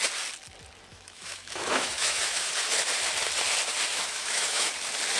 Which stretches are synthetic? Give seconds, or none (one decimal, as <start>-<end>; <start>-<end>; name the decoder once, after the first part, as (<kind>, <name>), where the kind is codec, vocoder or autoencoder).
0.9-2.5 (autoencoder, DAC-VAE); 3.9-4.7